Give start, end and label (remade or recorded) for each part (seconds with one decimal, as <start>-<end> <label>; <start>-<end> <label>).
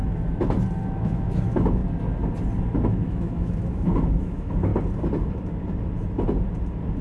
0.0-0.9 recorded; 0.9-1.8 remade; 1.8-2.9 recorded; 2.9-4.7 remade; 4.7-7.0 recorded